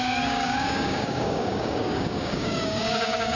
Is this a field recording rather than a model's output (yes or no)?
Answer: no